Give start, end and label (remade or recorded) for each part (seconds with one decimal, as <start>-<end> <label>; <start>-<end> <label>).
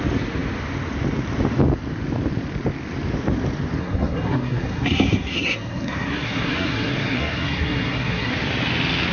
0.0-3.8 recorded; 3.8-8.3 remade; 8.3-9.1 recorded